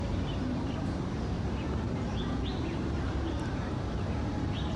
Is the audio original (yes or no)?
no